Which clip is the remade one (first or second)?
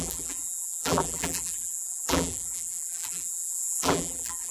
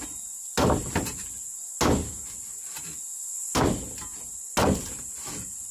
first